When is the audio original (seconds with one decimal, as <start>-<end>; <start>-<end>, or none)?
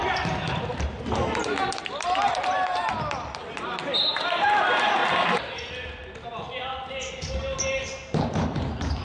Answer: 5.0-7.8